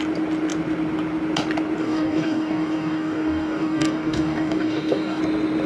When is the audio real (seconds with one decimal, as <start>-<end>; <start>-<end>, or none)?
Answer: 0.0-1.8; 5.2-5.7